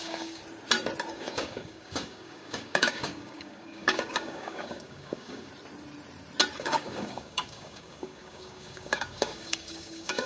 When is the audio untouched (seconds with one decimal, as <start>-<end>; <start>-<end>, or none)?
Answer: 0.4-1.1; 5.5-6.6